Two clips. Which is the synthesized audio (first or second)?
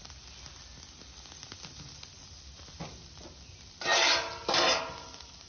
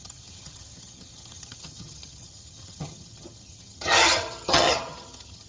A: second